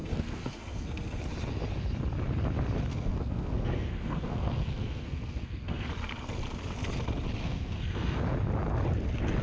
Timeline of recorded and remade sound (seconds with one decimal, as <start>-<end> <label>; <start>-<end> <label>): 0.0-1.2 remade; 1.2-2.9 recorded; 2.9-5.9 remade; 5.9-7.4 recorded; 7.4-8.2 remade; 8.2-9.4 recorded